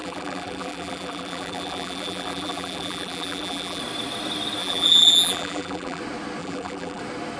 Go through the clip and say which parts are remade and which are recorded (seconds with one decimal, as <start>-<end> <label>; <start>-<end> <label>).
0.0-3.8 remade; 3.8-4.6 recorded; 4.6-6.0 remade; 6.0-6.4 recorded; 6.4-7.0 remade; 7.0-7.4 recorded